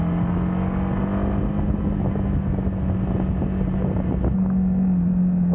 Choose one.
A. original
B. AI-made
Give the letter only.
A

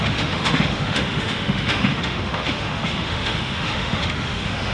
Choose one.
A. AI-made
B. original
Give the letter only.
A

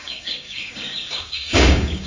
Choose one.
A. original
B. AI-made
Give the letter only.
B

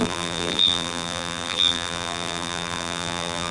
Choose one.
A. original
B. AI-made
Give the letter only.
B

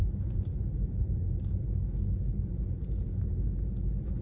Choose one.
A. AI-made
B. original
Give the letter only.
B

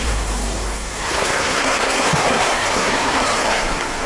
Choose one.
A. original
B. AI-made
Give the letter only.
B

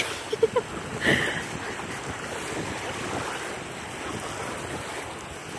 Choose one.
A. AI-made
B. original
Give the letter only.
B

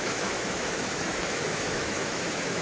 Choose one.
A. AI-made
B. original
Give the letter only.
A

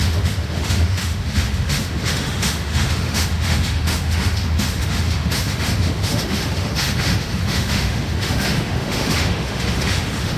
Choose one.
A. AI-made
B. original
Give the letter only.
A